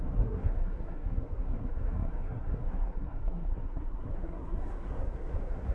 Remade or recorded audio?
remade